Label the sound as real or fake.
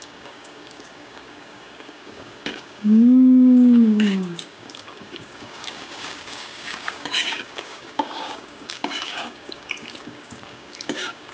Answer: fake